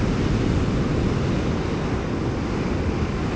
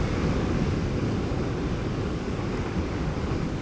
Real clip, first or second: first